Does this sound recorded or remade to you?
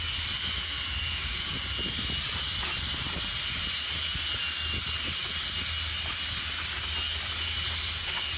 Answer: recorded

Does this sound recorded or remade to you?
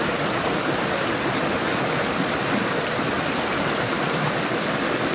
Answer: recorded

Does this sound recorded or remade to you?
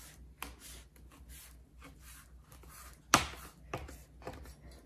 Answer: recorded